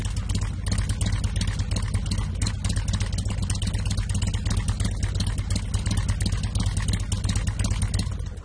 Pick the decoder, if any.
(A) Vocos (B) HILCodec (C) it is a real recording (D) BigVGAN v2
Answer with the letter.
C